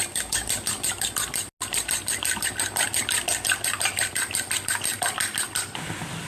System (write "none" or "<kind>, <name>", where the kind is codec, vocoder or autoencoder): none